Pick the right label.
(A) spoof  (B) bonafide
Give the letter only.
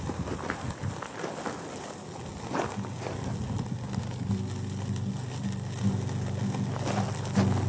B